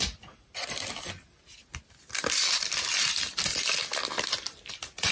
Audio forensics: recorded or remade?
recorded